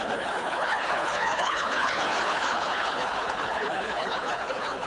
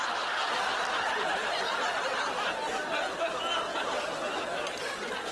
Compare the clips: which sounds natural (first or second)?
second